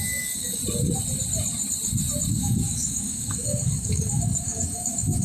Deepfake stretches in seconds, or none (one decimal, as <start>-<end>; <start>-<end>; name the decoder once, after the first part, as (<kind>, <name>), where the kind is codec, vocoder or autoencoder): 0.0-0.6 (codec, DAC); 2.3-5.2